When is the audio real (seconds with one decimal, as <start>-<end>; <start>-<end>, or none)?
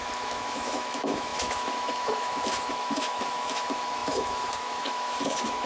none